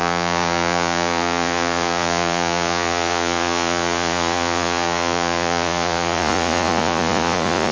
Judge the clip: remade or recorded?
remade